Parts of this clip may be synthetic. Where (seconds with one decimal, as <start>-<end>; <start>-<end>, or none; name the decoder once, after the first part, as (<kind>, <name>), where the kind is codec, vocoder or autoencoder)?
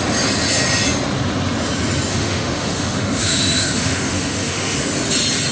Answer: 2.1-4.8 (autoencoder, DAC-VAE)